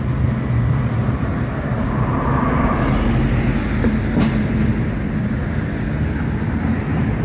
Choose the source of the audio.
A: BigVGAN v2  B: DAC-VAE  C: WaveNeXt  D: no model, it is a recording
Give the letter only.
D